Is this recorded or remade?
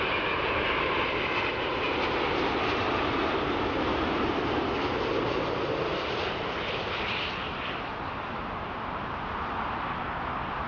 recorded